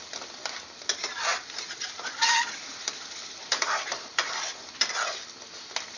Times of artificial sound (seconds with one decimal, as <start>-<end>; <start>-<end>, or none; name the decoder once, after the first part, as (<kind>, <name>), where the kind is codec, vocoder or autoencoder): 1.3-4.7 (vocoder, BigVGAN v2)